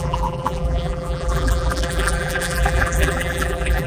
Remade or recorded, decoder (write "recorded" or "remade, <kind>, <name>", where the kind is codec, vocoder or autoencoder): remade, vocoder, BigVGAN v2